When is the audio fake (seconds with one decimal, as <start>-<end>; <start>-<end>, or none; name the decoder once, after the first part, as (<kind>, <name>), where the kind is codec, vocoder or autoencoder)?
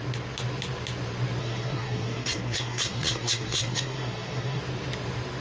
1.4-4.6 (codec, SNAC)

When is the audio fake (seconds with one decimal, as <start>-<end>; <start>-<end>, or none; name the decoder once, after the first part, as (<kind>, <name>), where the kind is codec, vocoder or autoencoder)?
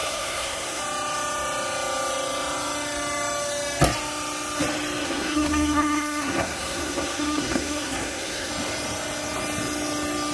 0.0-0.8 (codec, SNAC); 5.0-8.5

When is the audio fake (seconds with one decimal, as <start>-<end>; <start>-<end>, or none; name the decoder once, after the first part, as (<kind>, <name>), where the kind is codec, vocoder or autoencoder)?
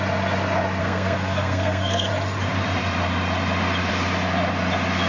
0.8-2.1 (codec, SNAC)